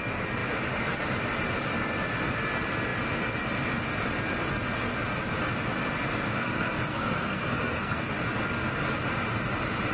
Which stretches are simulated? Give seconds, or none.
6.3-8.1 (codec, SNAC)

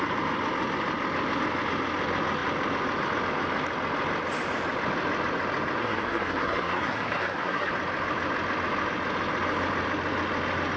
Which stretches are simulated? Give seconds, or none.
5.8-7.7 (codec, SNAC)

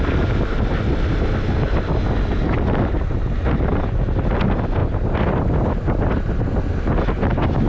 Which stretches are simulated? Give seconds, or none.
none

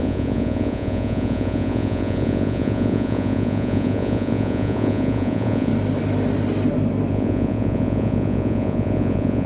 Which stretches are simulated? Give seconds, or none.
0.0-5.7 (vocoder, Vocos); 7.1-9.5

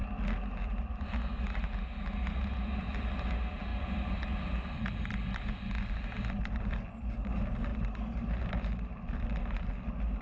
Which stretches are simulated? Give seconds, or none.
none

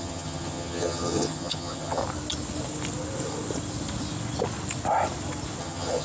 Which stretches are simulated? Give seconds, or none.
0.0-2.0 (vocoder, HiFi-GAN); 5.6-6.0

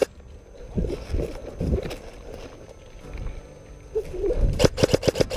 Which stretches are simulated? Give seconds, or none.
0.6-1.4 (vocoder, BigVGAN v2); 4.6-5.4

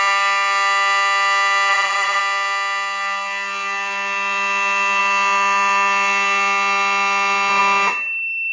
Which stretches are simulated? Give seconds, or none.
1.7-2.2 (vocoder, Vocos)